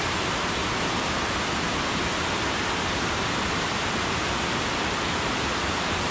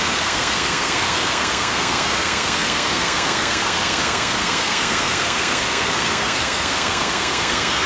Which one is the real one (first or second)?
first